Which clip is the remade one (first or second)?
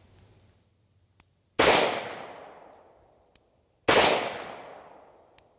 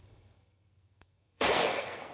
second